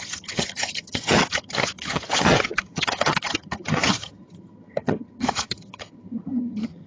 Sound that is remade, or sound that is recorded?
remade